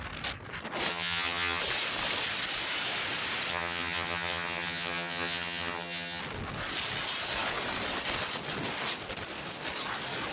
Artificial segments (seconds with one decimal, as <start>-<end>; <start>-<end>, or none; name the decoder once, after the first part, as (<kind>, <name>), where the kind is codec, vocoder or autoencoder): 0.9-1.6 (vocoder, HiFi-GAN); 3.5-6.2